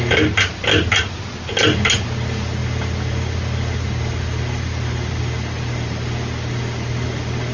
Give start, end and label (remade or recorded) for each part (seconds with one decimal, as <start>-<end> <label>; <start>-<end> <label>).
0.0-7.5 recorded